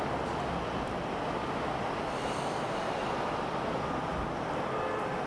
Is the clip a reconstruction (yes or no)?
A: no